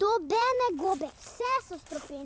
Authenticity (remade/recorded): remade